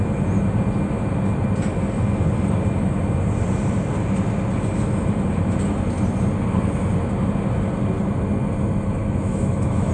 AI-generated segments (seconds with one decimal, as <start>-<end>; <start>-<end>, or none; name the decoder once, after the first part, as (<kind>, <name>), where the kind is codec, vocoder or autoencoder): 9.0-9.9 (autoencoder, DAC-VAE)